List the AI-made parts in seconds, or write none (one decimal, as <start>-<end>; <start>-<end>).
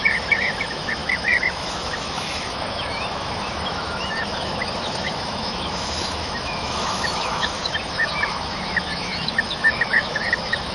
0.0-10.7